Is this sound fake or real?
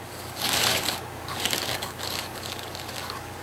fake